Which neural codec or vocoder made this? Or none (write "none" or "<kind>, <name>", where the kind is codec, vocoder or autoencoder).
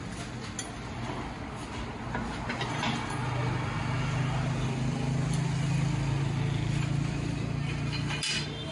none